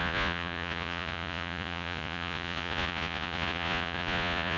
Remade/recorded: remade